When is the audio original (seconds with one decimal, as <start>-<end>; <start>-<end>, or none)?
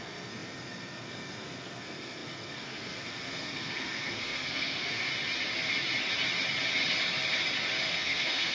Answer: 5.1-7.9